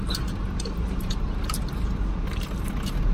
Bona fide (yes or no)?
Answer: no